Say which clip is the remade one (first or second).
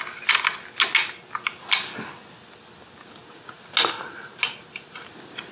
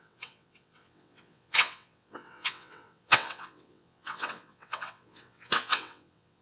second